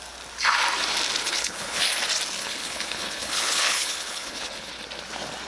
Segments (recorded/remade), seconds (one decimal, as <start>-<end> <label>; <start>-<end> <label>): 0.0-1.2 recorded; 1.2-1.8 remade; 1.8-2.4 recorded; 2.4-4.7 remade; 4.7-5.5 recorded